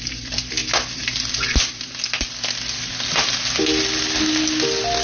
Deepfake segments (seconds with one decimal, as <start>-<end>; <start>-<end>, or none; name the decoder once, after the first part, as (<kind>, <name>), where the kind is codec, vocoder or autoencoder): none